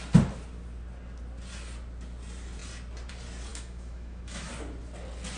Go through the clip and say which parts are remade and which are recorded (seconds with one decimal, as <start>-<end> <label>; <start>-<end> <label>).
0.0-3.5 recorded; 3.5-4.5 remade; 4.5-5.4 recorded